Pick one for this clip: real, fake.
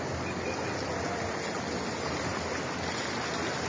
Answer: real